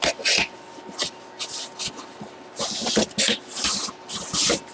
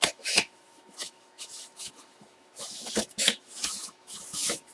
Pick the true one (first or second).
first